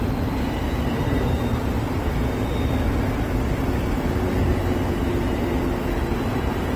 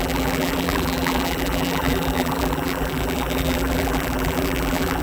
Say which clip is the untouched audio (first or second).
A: first